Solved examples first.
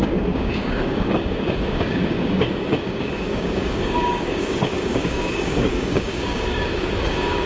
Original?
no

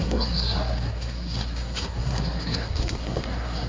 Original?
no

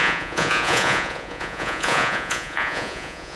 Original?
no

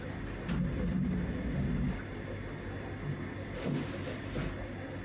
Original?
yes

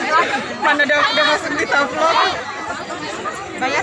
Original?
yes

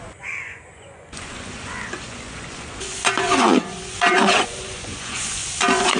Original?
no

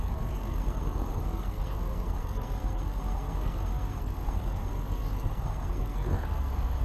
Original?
no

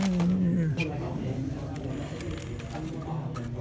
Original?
yes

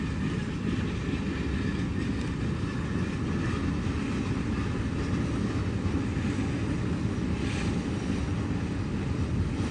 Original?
yes